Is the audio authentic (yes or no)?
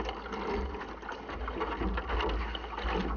yes